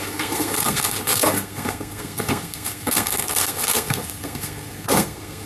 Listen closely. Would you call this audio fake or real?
fake